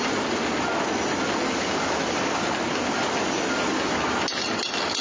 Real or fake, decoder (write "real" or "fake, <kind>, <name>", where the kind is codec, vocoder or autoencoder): real